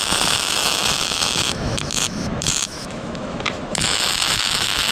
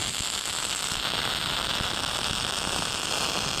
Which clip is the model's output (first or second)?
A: first